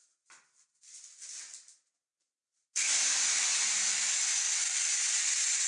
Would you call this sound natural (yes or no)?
yes